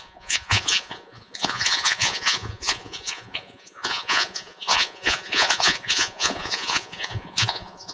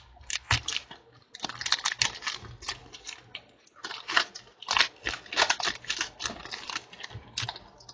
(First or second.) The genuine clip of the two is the second